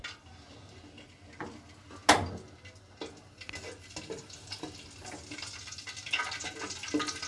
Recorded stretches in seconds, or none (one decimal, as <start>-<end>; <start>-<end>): 0.0-7.3